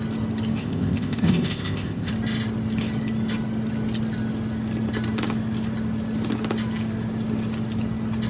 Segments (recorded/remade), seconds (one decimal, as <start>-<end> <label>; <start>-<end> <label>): 0.0-0.6 recorded; 0.6-2.1 remade; 2.1-8.3 recorded